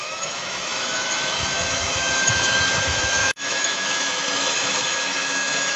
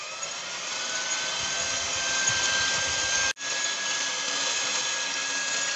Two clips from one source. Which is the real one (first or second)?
second